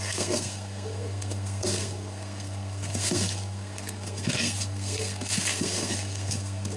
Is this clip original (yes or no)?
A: no